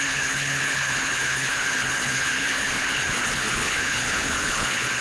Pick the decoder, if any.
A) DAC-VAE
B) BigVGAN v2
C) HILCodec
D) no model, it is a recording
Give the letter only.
C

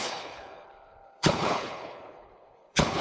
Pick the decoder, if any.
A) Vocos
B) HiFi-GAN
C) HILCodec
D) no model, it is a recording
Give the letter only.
C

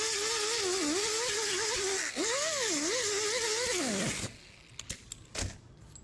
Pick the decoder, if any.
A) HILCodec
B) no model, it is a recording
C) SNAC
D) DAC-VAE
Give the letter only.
B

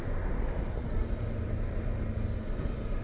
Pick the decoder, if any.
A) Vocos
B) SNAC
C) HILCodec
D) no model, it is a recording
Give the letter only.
D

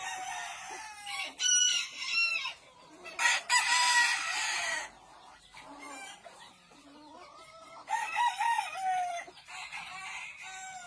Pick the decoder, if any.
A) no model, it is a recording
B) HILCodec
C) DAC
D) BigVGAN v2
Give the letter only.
A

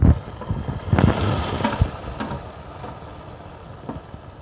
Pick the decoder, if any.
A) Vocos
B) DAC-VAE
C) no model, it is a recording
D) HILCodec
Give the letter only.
C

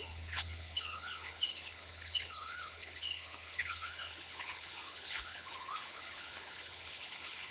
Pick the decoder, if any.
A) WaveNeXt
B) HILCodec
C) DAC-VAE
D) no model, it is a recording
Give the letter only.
B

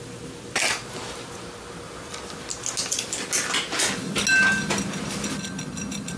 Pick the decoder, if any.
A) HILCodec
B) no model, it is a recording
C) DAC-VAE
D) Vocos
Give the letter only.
B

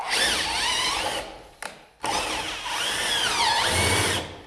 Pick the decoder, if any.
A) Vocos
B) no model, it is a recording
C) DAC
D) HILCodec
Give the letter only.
B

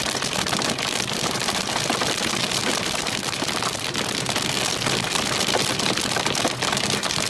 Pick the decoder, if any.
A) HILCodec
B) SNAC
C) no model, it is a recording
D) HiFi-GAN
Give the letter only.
C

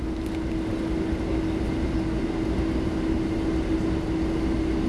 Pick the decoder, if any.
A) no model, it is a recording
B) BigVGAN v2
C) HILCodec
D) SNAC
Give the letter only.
A